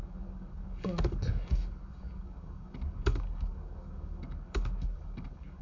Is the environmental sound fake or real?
fake